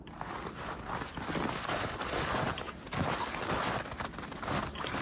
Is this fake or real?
real